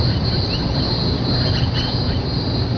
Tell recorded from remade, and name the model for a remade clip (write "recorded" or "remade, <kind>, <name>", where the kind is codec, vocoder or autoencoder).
recorded